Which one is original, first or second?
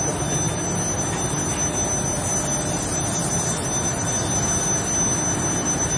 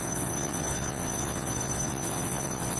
first